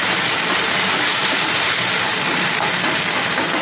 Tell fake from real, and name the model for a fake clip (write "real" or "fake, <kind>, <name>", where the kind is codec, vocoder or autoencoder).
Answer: real